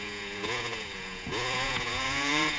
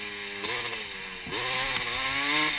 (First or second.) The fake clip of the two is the first